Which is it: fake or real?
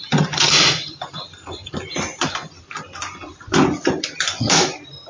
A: fake